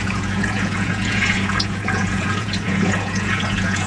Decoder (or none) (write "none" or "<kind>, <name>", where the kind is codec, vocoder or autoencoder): vocoder, Vocos